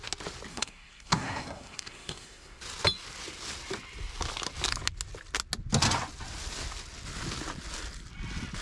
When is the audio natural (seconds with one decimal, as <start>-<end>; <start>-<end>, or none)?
0.0-0.5; 2.6-8.6